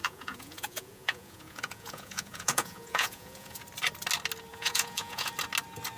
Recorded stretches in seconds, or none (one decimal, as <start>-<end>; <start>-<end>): 3.6-4.5; 5.3-6.0